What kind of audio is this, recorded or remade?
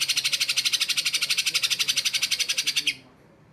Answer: recorded